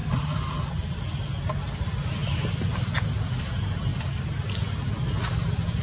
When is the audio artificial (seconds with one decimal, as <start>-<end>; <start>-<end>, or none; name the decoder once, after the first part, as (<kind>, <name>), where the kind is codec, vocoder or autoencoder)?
0.0-0.5 (vocoder, BigVGAN v2); 3.9-4.4